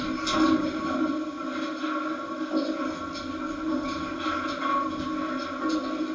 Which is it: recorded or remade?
recorded